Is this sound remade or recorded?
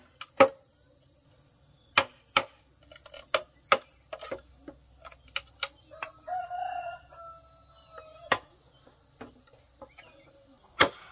recorded